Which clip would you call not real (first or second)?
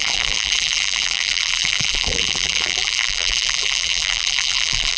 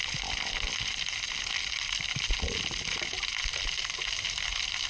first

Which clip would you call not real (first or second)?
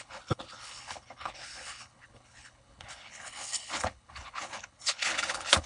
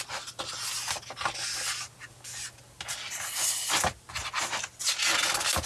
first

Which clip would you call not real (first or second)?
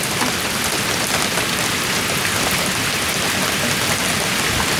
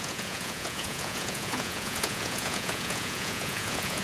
second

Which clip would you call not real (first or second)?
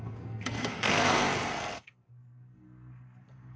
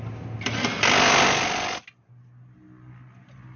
first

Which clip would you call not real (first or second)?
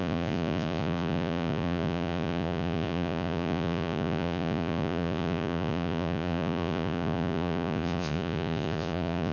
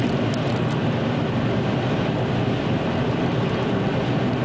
first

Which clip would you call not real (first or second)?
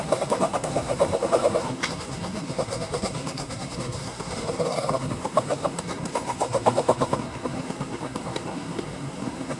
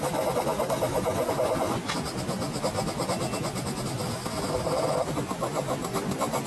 first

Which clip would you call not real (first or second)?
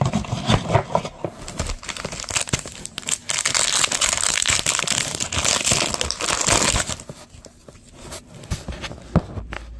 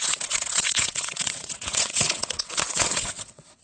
second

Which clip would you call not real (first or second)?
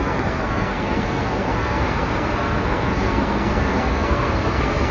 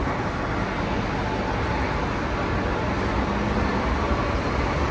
first